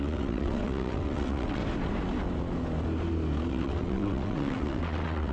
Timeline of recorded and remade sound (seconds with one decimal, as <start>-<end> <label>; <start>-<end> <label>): 0.0-1.6 remade; 1.6-3.5 recorded; 3.5-5.3 remade